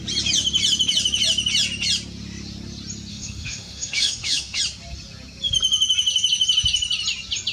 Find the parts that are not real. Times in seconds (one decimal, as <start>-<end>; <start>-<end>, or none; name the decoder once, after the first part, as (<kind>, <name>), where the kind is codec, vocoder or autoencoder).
3.1-4.6 (autoencoder, DAC-VAE)